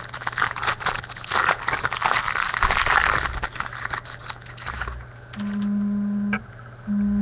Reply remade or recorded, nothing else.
recorded